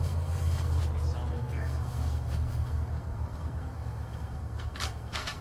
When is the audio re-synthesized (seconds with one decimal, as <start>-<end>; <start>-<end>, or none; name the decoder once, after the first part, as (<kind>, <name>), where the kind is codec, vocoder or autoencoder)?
0.0-0.8 (codec, SNAC); 1.3-5.4